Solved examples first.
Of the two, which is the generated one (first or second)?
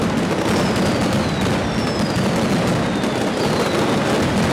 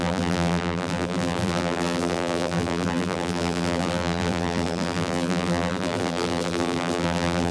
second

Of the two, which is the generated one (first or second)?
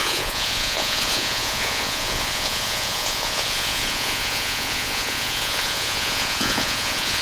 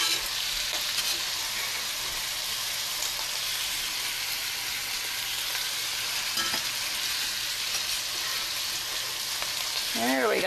first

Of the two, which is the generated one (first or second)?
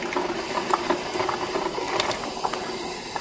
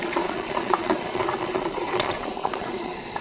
second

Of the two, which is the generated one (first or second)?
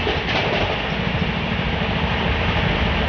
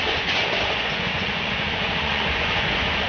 second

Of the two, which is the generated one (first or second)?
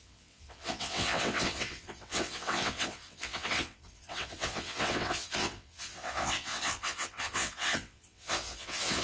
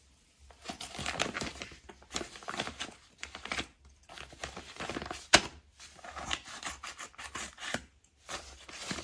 first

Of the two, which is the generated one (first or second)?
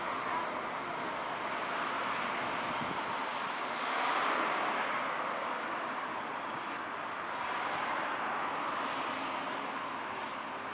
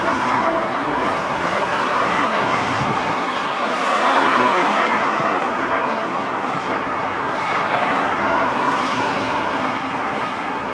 second